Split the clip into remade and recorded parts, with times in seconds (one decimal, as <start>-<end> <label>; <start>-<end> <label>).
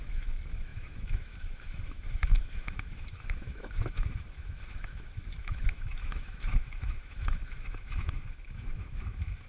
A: 0.0-9.5 remade